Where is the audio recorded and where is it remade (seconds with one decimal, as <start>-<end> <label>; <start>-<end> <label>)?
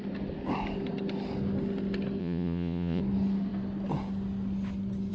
0.0-2.2 recorded; 2.2-3.0 remade; 3.0-5.1 recorded